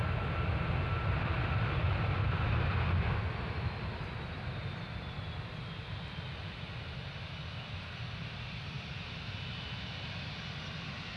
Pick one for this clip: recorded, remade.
recorded